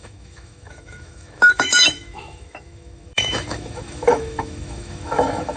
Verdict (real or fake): fake